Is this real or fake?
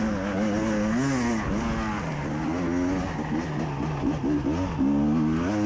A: real